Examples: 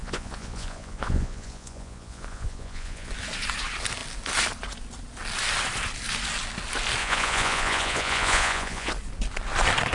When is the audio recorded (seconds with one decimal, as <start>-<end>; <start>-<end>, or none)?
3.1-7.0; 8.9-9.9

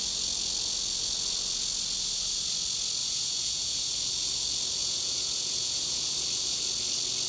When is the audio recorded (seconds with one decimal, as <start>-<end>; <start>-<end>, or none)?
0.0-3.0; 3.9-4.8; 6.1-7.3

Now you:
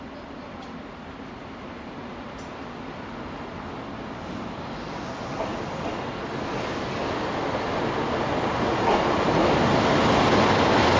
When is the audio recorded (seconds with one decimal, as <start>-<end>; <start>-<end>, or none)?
0.0-11.0

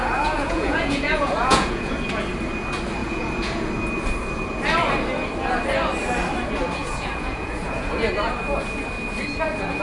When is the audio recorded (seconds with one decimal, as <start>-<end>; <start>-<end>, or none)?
1.9-3.0; 3.7-6.8; 8.1-9.8